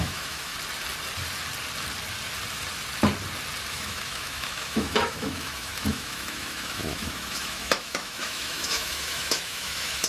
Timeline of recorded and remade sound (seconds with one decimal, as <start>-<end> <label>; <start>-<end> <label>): 0.0-0.5 remade; 0.5-3.7 recorded; 3.7-10.1 remade